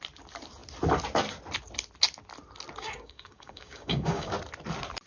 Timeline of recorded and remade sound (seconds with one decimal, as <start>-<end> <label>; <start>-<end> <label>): 0.0-2.8 recorded; 2.8-4.3 remade; 4.3-5.1 recorded